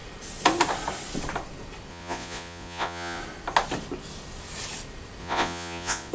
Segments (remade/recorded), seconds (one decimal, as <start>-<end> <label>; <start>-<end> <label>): 0.0-1.9 recorded; 1.9-3.2 remade; 3.2-5.2 recorded; 5.2-6.1 remade